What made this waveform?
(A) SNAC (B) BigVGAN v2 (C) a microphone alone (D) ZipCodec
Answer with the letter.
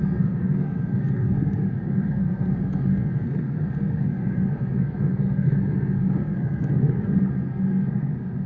A